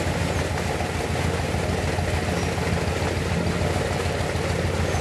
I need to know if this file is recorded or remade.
recorded